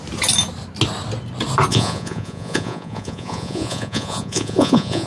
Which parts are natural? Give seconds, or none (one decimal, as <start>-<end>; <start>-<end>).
0.0-1.7